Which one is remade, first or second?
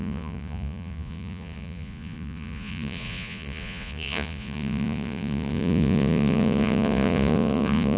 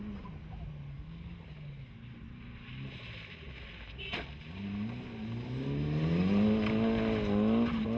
first